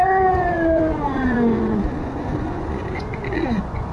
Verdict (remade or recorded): remade